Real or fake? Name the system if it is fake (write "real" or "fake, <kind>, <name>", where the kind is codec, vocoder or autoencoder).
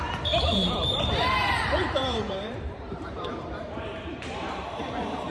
fake, vocoder, BigVGAN v2